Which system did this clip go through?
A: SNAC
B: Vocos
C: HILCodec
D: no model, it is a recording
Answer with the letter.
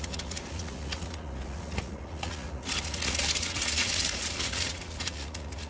B